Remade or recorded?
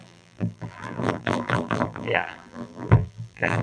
remade